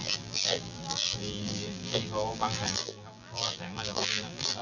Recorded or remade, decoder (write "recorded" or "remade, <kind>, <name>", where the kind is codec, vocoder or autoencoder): remade, vocoder, BigVGAN v2